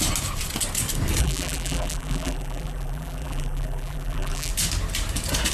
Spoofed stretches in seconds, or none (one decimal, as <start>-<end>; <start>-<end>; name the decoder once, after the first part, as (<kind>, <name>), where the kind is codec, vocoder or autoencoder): 1.2-4.5 (vocoder, BigVGAN v2)